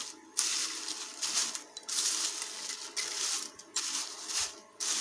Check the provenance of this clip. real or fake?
real